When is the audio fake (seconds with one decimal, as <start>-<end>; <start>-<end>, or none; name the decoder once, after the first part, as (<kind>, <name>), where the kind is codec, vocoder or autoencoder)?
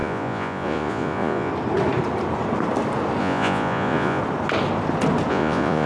0.0-1.5 (vocoder, Vocos); 3.2-4.2; 5.3-5.9